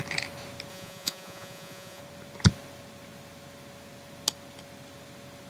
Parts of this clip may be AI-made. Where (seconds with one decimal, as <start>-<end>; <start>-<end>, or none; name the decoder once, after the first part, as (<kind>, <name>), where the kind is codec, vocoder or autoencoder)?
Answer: 0.7-2.0 (vocoder, Vocos)